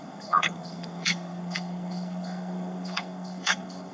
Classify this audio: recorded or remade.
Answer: remade